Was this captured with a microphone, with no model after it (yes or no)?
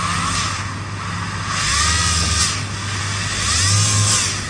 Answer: yes